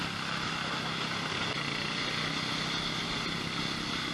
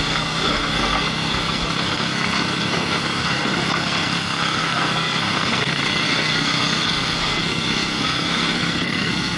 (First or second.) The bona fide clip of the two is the first